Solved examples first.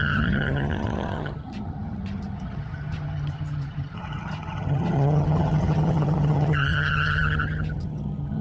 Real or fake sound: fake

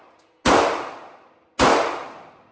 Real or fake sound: real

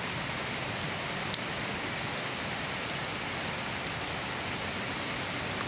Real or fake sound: real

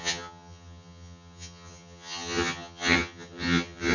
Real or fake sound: fake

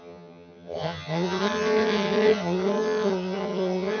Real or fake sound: fake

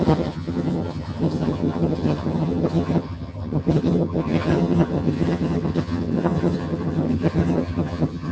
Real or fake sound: fake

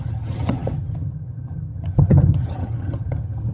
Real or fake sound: fake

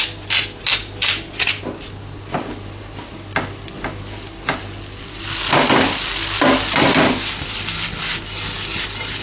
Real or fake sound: real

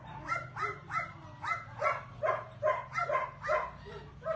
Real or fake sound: real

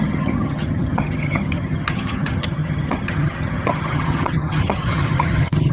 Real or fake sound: fake